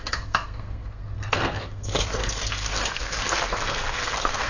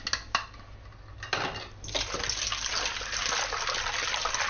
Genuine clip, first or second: second